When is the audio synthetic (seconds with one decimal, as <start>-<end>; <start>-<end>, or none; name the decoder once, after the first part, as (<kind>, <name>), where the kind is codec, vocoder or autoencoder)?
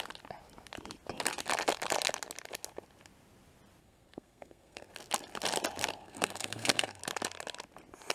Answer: 3.8-4.9 (codec, SNAC); 5.9-7.0